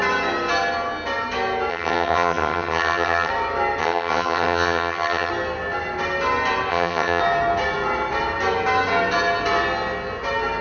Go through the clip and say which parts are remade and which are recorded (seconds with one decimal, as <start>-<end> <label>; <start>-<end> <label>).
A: 0.0-1.7 recorded; 1.7-3.3 remade; 3.3-3.8 recorded; 3.8-5.3 remade; 5.3-6.7 recorded; 6.7-7.2 remade; 7.2-10.6 recorded